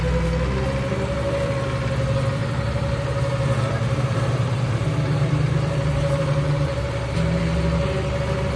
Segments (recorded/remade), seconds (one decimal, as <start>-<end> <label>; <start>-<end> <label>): 0.0-2.4 recorded; 2.4-7.4 remade; 7.4-8.6 recorded